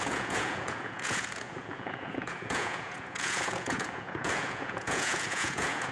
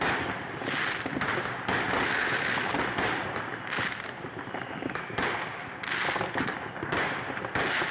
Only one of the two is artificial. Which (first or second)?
first